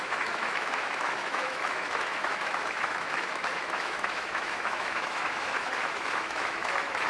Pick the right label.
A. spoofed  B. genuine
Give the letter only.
A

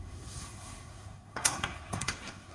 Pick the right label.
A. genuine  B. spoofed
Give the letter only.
B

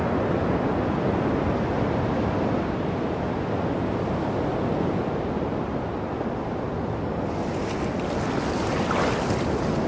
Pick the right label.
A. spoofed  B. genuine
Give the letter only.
B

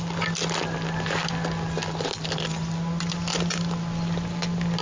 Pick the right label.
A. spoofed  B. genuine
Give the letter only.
B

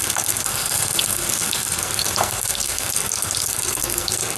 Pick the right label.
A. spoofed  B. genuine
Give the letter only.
A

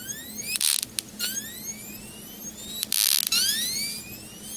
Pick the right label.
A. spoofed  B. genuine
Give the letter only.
B